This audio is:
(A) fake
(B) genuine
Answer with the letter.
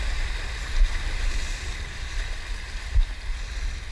B